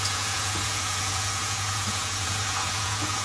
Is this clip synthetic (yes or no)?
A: yes